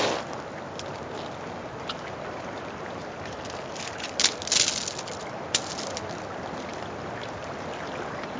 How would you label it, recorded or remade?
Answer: recorded